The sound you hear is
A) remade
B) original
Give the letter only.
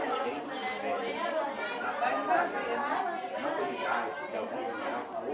B